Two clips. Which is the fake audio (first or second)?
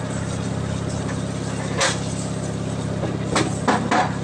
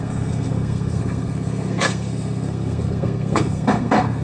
second